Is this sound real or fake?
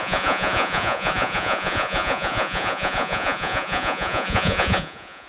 fake